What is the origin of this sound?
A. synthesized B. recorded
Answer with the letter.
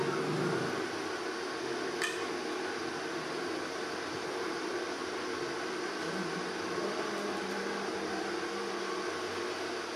B